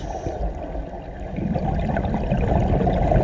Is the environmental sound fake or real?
real